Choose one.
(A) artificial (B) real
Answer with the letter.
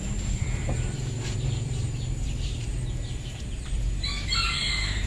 A